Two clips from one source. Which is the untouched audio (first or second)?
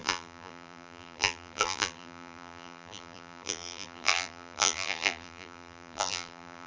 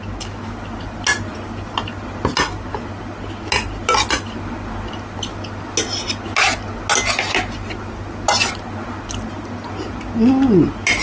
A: second